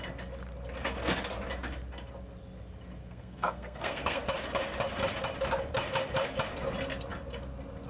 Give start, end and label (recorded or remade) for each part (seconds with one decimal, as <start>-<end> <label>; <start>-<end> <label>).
0.0-3.0 recorded; 3.0-4.2 remade; 4.2-7.9 recorded

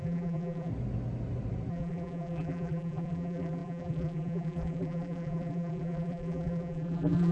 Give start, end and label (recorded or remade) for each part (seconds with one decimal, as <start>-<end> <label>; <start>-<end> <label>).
0.0-0.7 remade; 0.7-1.7 recorded; 1.7-7.3 remade

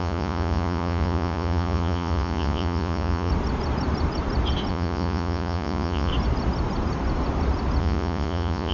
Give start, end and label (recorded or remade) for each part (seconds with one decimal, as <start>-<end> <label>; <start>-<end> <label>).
0.0-3.3 remade; 3.3-4.7 recorded; 4.7-6.1 remade; 6.1-7.8 recorded; 7.8-8.7 remade

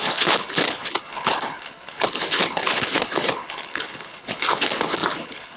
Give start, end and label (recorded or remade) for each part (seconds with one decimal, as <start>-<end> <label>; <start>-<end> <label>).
0.0-5.6 remade

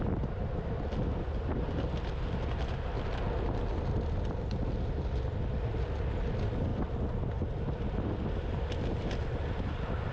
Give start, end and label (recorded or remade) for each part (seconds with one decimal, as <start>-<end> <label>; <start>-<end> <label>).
0.0-10.1 recorded

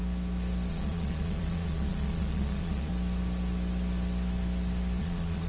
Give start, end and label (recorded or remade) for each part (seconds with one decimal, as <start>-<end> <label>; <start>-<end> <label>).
0.0-0.7 recorded; 0.7-2.9 remade; 2.9-5.0 recorded; 5.0-5.5 remade

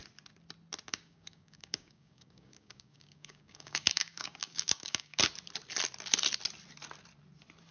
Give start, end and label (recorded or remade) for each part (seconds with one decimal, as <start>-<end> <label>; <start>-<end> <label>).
0.0-0.9 recorded; 0.9-5.2 remade; 5.2-7.7 recorded